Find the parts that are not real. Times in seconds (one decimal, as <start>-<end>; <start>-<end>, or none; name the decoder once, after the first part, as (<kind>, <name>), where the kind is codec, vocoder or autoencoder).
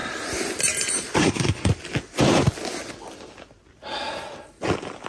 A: 1.2-1.7 (codec, SNAC)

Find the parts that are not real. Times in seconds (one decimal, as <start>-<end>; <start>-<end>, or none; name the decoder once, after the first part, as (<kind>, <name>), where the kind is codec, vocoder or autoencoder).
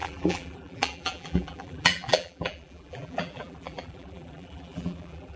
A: 0.0-5.4 (vocoder, BigVGAN v2)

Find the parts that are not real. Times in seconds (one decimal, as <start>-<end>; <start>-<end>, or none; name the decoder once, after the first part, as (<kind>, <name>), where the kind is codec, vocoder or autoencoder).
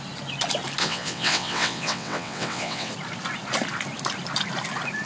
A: 0.8-2.9 (vocoder, WaveNeXt)